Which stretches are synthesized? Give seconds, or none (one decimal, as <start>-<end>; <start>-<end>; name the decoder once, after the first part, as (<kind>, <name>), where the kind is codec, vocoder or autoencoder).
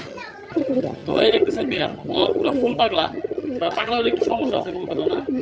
0.0-5.4 (vocoder, HiFi-GAN)